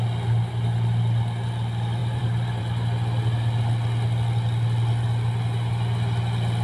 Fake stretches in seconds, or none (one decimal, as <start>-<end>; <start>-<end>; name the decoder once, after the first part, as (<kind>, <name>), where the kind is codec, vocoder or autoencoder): 2.0-2.6 (vocoder, BigVGAN v2)